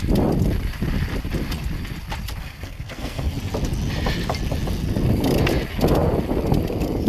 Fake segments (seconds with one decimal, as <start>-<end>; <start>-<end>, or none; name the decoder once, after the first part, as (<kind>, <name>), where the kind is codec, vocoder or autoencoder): 2.4-3.3 (codec, SNAC)